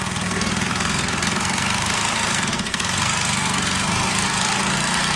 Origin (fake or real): fake